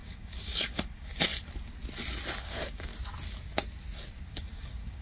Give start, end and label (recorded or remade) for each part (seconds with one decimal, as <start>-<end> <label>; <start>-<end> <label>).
0.0-1.3 remade; 1.3-2.4 recorded; 2.4-2.9 remade; 2.9-4.3 recorded; 4.3-5.0 remade